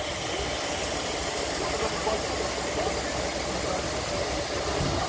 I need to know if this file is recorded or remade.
recorded